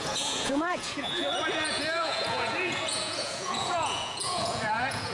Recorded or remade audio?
remade